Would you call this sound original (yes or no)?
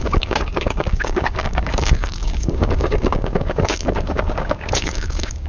no